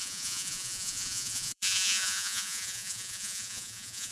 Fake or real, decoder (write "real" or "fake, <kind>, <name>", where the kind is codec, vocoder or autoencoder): fake, vocoder, Vocos